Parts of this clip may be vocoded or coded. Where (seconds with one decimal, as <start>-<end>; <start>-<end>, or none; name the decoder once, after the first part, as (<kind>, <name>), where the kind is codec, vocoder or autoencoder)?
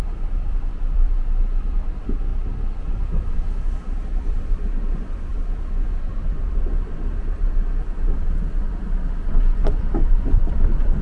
0.0-11.0 (vocoder, BigVGAN v2)